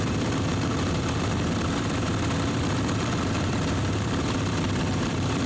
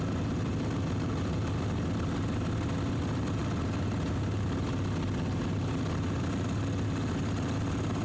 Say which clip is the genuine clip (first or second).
second